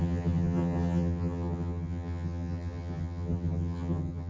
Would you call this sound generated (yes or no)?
yes